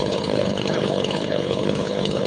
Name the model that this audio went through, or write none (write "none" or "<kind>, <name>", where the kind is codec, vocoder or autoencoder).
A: codec, HILCodec